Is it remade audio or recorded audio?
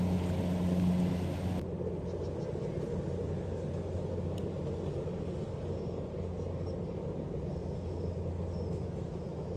recorded